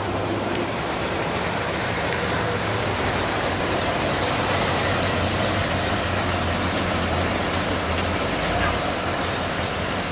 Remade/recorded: remade